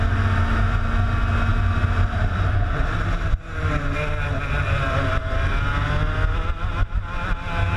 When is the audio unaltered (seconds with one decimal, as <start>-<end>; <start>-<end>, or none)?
0.0-7.8